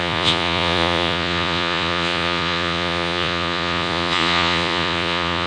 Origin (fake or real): fake